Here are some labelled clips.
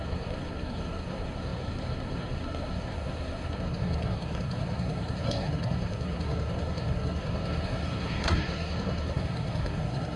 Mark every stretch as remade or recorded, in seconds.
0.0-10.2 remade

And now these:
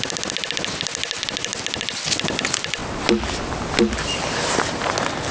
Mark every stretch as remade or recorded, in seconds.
0.0-5.3 recorded

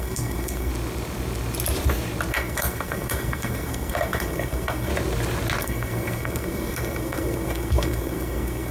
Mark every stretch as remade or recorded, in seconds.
0.0-0.7 remade; 0.7-2.3 recorded; 2.3-4.9 remade; 4.9-5.6 recorded; 5.6-8.7 remade

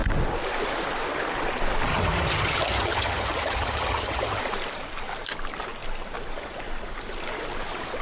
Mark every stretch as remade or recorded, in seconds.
0.0-1.9 recorded; 1.9-4.4 remade; 4.4-8.0 recorded